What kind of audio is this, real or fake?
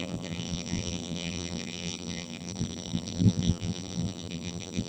fake